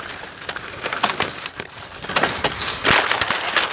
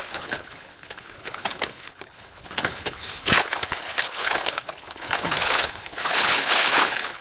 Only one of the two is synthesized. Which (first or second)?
second